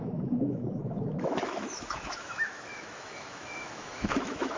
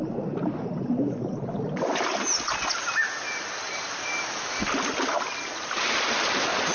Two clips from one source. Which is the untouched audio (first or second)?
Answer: second